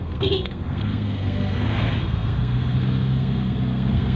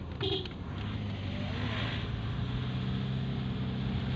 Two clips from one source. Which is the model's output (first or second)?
first